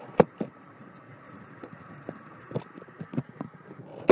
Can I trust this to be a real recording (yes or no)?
yes